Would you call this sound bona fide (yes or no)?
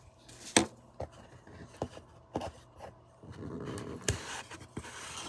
yes